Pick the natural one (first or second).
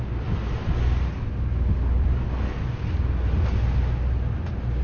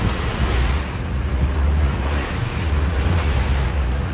first